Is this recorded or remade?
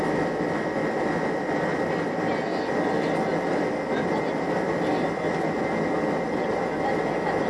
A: recorded